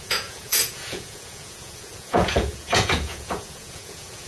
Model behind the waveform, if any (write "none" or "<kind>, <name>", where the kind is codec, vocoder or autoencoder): vocoder, Vocos